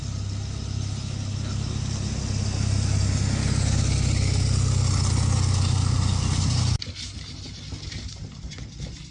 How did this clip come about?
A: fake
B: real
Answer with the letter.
B